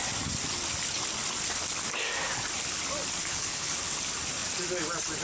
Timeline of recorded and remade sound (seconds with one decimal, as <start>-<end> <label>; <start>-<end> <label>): 0.0-3.2 recorded; 3.2-3.8 remade; 3.8-5.2 recorded